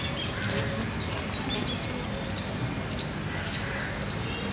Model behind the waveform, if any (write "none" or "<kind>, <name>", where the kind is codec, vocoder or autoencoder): none